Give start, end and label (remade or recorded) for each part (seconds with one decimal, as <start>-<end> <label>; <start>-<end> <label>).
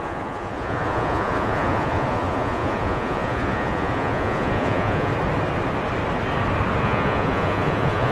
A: 0.0-5.1 remade; 5.1-6.8 recorded; 6.8-8.1 remade